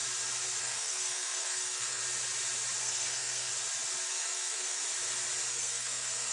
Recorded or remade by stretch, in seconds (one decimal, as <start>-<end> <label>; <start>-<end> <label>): 0.0-0.6 recorded; 0.6-2.0 remade; 2.0-2.8 recorded; 2.8-3.5 remade; 3.5-4.1 recorded; 4.1-4.8 remade; 4.8-5.5 recorded; 5.5-6.3 remade